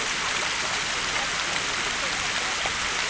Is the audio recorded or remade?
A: recorded